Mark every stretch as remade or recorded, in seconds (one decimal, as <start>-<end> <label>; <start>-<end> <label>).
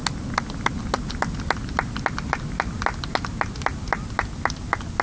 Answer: 0.0-5.0 recorded